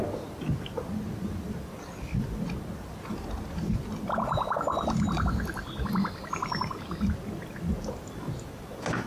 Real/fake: real